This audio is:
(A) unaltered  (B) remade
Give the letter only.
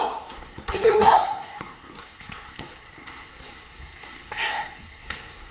B